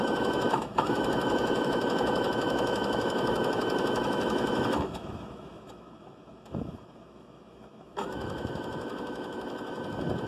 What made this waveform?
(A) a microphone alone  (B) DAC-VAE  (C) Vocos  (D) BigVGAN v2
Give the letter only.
B